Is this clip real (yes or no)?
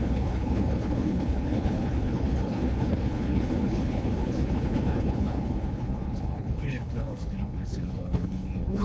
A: no